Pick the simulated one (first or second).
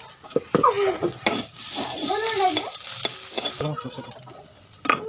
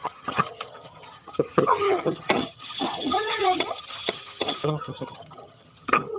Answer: second